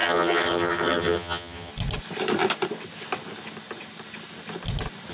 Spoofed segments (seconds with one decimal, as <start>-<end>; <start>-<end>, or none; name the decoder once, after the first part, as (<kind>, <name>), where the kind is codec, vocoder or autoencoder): 0.0-1.7 (vocoder, HiFi-GAN)